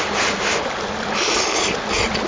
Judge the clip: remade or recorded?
recorded